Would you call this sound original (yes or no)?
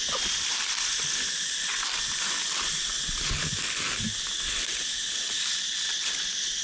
yes